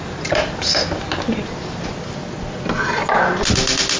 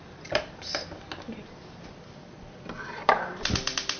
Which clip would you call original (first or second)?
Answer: first